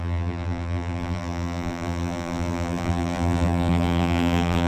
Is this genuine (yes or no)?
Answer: no